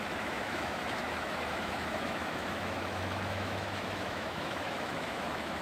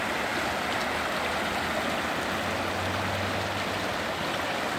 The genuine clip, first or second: second